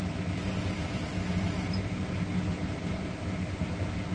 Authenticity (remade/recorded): recorded